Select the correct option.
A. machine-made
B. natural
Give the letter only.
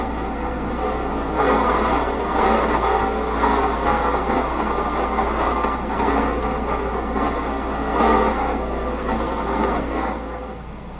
A